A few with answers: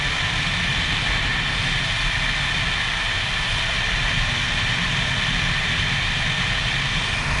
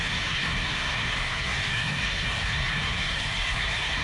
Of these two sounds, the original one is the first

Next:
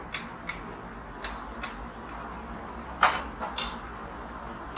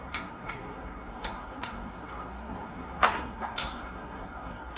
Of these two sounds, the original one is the first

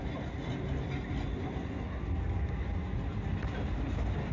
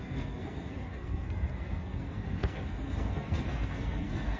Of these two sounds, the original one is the first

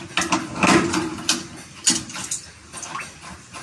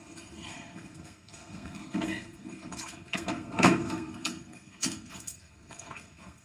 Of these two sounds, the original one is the first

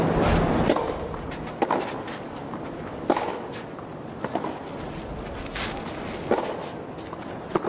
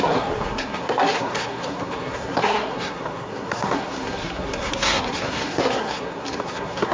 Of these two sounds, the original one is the first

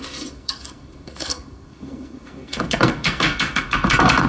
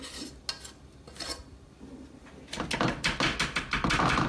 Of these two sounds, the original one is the second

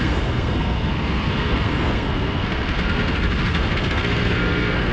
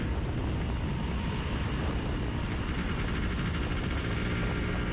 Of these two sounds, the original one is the second